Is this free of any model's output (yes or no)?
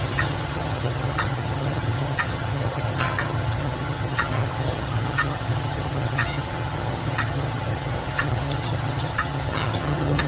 no